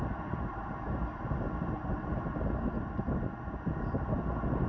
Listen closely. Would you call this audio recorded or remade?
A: recorded